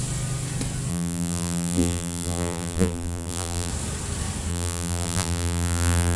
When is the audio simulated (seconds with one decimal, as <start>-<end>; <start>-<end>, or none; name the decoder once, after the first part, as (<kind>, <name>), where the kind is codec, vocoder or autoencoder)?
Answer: 0.9-3.7 (vocoder, BigVGAN v2); 4.5-6.2